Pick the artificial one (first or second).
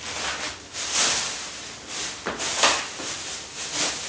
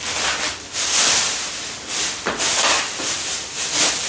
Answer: second